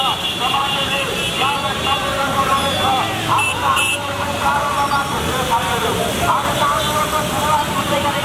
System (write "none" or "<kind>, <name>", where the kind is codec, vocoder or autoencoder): vocoder, BigVGAN v2